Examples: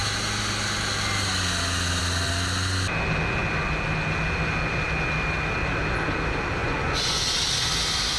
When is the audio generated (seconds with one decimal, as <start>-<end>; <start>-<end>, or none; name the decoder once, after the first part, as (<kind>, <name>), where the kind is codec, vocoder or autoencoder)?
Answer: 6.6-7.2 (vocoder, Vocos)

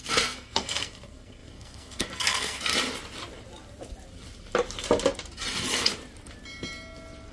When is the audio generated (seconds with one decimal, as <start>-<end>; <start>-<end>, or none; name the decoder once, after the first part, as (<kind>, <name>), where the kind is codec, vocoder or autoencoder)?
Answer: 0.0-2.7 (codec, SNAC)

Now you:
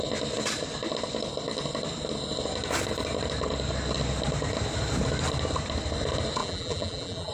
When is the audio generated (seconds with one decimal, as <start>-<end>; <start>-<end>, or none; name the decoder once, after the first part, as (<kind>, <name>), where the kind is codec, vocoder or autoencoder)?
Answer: 6.4-7.3 (vocoder, BigVGAN v2)

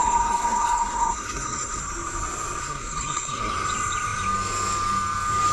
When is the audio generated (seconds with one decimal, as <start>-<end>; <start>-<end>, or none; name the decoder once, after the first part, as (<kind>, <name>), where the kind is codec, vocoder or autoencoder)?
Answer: 0.0-1.8 (codec, SNAC); 2.6-3.5

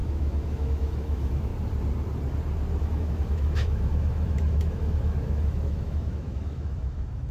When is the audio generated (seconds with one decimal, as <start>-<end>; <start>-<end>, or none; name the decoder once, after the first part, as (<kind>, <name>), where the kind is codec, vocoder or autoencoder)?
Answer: 0.0-1.5 (autoencoder, DAC-VAE); 2.8-7.3

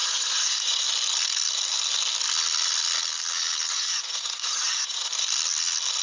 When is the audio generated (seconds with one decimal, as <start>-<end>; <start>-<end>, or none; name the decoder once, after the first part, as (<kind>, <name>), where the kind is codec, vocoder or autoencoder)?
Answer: 0.0-0.8 (vocoder, Vocos); 3.7-5.1

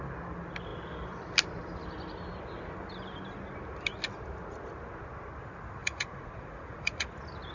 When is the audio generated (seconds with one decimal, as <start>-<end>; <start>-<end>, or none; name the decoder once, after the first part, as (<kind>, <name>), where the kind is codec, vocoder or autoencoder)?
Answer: 5.8-7.1 (vocoder, Vocos)

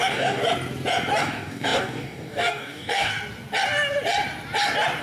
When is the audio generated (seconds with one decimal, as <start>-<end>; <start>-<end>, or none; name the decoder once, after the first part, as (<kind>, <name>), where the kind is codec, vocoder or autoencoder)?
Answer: 0.0-0.4 (codec, DAC); 1.2-3.1